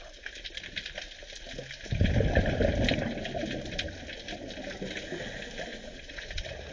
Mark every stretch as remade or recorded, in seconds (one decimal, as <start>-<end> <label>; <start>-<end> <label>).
0.0-5.7 recorded; 5.7-6.7 remade